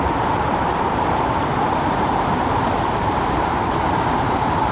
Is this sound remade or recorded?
remade